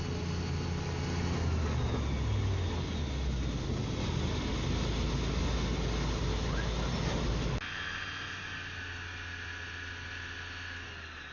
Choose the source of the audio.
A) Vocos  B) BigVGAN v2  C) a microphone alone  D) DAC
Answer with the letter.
C